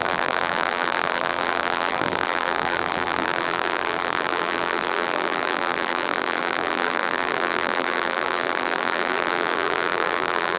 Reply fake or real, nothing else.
fake